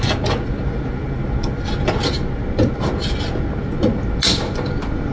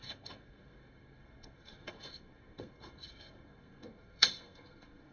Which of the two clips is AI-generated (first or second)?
second